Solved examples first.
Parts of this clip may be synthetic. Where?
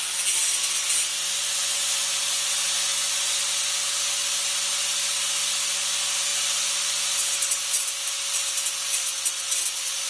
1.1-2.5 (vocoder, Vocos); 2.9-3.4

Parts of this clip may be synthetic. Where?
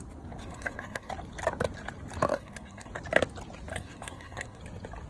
0.4-1.1 (codec, SNAC); 2.3-2.9; 3.7-4.6